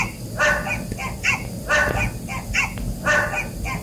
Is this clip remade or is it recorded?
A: recorded